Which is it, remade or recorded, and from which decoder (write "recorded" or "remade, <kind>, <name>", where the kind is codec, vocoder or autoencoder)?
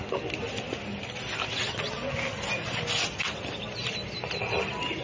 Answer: recorded